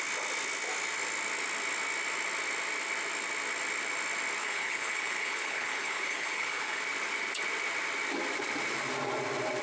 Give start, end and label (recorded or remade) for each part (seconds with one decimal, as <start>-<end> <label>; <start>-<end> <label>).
0.0-4.4 recorded; 4.4-6.8 remade; 6.8-9.6 recorded